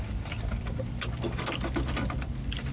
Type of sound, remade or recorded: recorded